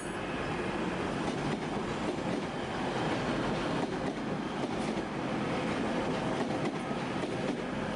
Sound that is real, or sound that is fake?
real